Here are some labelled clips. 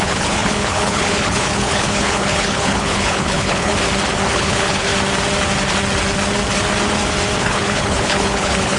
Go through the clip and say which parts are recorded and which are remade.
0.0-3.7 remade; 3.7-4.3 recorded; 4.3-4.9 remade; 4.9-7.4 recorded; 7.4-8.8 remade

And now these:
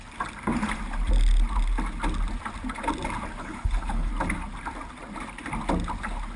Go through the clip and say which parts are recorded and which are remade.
0.0-3.4 recorded; 3.4-4.1 remade; 4.1-6.4 recorded

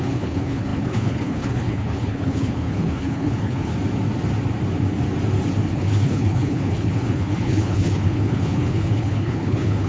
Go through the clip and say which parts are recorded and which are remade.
0.0-3.7 remade; 3.7-5.7 recorded; 5.7-9.9 remade

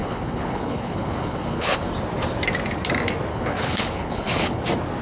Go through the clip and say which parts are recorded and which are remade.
0.0-1.9 remade; 1.9-3.3 recorded; 3.3-4.6 remade; 4.6-5.0 recorded